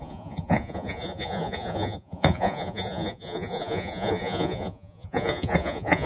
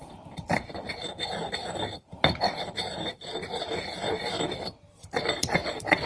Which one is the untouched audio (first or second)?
second